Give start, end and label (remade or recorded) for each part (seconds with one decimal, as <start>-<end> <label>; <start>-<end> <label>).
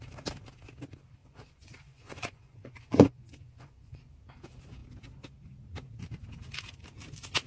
0.0-1.2 recorded; 1.2-4.1 remade; 4.1-7.5 recorded